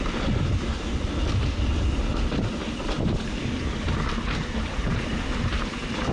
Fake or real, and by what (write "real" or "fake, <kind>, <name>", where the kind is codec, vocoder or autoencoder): real